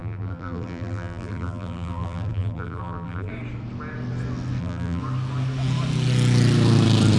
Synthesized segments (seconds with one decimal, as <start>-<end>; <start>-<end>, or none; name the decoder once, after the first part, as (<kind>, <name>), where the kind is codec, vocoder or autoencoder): 0.0-3.3 (vocoder, BigVGAN v2); 4.6-5.0